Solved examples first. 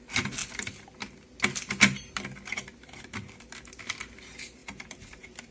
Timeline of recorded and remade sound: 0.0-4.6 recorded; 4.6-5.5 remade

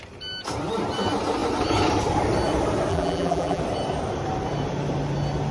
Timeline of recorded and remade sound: 0.0-2.9 recorded; 2.9-3.6 remade; 3.6-5.5 recorded

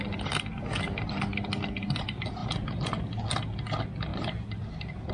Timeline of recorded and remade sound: 0.0-4.1 recorded; 4.1-5.1 remade

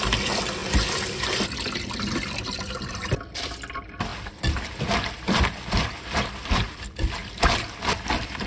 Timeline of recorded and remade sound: 0.0-0.6 remade; 0.6-3.2 recorded; 3.2-7.2 remade; 7.2-7.8 recorded; 7.8-8.5 remade

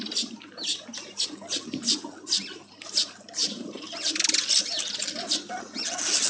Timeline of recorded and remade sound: 0.0-0.9 remade; 0.9-2.7 recorded; 2.7-6.3 remade

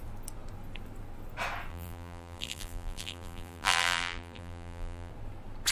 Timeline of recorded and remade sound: 0.0-1.7 recorded; 1.7-5.1 remade; 5.1-5.7 recorded